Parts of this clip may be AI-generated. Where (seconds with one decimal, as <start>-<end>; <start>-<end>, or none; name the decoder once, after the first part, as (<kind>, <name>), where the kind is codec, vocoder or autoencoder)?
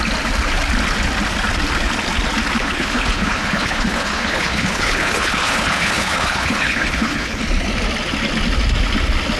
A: 2.6-7.4 (codec, HILCodec)